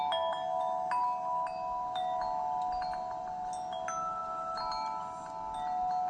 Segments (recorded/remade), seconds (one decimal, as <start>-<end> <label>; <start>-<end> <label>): 0.0-6.1 recorded